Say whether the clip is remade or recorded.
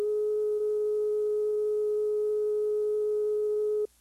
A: recorded